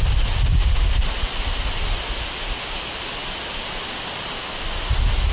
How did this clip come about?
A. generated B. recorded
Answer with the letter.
B